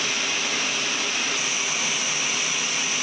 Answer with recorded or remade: recorded